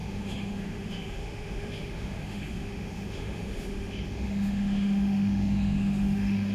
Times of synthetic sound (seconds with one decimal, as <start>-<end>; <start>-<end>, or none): 0.0-6.5